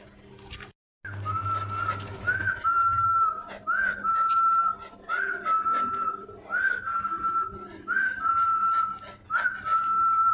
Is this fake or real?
real